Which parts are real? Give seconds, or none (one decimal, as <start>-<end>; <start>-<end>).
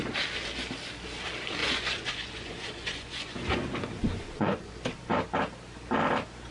0.0-1.6; 4.7-6.5